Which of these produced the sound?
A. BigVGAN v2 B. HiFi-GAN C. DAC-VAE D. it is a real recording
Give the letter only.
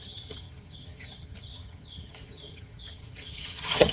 B